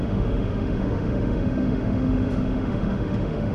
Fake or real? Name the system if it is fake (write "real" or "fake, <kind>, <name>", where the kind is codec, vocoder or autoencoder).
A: fake, autoencoder, DAC-VAE